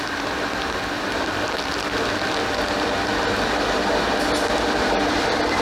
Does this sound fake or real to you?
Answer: real